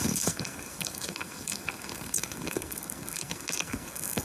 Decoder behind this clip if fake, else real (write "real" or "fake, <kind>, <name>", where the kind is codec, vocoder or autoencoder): fake, codec, SNAC